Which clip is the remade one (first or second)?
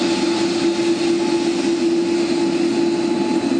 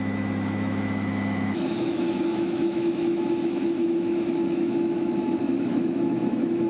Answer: second